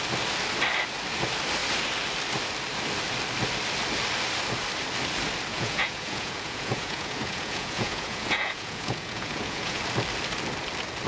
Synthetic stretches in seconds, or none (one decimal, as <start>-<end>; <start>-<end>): 5.5-9.8